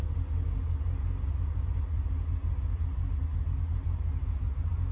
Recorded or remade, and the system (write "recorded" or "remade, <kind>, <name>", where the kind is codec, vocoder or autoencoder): recorded